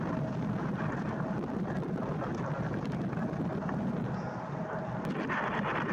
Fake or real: real